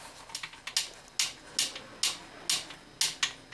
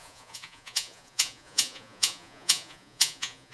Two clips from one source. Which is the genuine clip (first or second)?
first